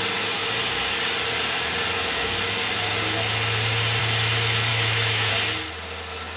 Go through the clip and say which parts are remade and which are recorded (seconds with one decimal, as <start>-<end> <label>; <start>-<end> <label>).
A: 0.0-4.7 recorded; 4.7-5.3 remade; 5.3-6.4 recorded